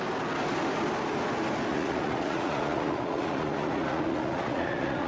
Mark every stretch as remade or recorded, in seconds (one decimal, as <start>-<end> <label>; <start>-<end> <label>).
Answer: 0.0-1.7 recorded; 1.7-5.1 remade